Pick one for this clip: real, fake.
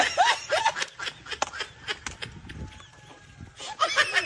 real